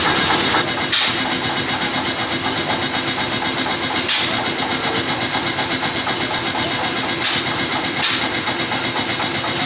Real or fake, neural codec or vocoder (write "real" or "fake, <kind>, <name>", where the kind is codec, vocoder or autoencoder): real